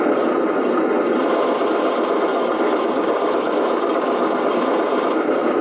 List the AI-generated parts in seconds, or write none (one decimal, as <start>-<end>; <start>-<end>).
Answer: 2.3-4.6